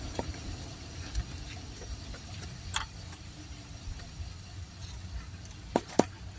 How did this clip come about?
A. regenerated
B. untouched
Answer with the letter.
B